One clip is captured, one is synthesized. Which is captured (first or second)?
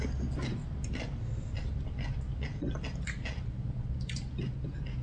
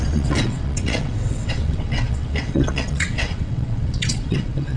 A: first